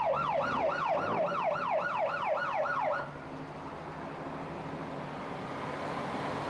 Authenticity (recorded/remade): recorded